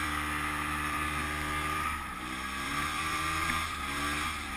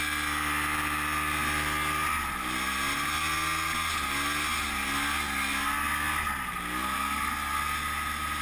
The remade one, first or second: first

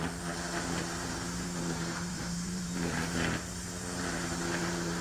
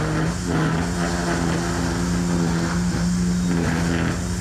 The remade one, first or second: first